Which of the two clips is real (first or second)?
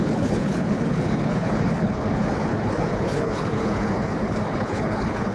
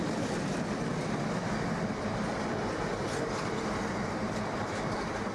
second